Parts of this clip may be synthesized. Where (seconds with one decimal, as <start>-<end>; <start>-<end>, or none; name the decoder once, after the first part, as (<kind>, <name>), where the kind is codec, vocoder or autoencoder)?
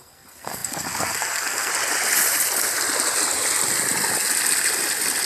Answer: 0.0-1.7 (codec, SNAC)